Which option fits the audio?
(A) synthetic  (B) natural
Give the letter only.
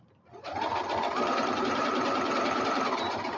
A